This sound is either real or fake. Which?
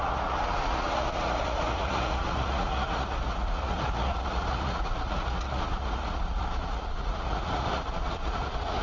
fake